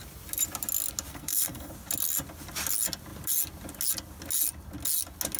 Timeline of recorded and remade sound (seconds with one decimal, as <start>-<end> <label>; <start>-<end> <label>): 0.0-1.1 recorded; 1.1-1.7 remade; 1.7-5.4 recorded